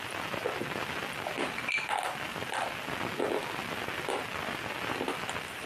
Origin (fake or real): real